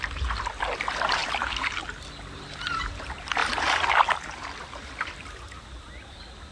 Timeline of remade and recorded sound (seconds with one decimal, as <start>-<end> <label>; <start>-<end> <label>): 0.0-6.5 recorded